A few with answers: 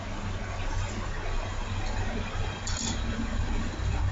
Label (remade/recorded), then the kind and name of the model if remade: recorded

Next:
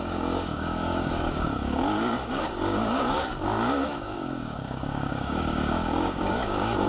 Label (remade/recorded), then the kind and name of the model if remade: remade, codec, DAC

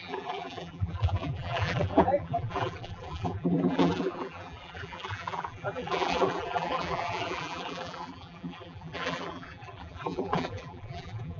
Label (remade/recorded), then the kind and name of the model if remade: remade, vocoder, BigVGAN v2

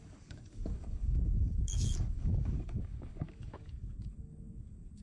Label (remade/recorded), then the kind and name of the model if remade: remade, codec, DAC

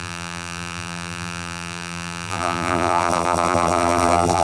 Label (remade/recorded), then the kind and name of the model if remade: remade, vocoder, BigVGAN v2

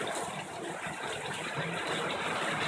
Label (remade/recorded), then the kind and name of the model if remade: recorded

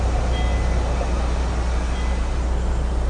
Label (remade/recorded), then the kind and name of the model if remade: recorded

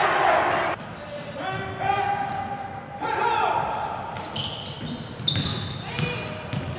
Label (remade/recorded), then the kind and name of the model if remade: recorded